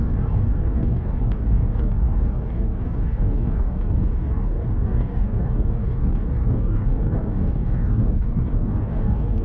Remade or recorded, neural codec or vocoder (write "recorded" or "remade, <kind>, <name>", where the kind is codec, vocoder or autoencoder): remade, codec, DAC